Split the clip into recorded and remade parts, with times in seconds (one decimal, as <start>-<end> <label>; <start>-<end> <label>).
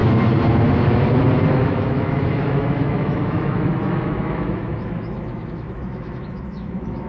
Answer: 0.0-1.5 recorded; 1.5-7.1 remade